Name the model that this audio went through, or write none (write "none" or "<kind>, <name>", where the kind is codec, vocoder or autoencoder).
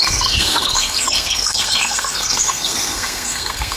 codec, SNAC